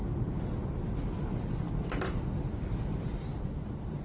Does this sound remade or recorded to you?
recorded